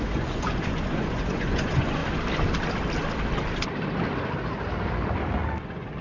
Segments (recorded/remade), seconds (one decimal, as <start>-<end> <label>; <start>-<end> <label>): 0.0-2.0 remade; 2.0-5.6 recorded; 5.6-6.0 remade